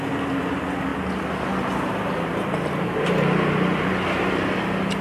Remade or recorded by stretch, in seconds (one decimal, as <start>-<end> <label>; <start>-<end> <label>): 0.0-5.0 recorded